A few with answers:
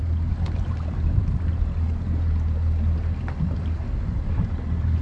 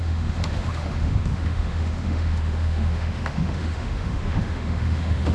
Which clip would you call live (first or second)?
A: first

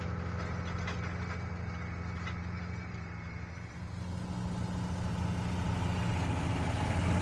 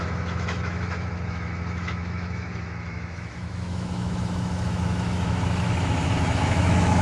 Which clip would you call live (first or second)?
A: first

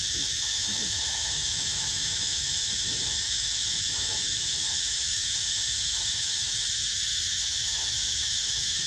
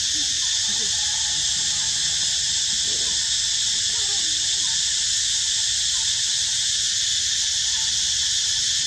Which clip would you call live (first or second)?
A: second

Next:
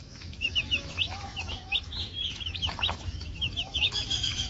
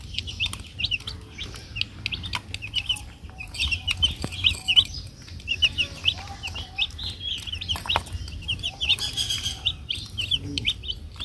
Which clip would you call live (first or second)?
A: second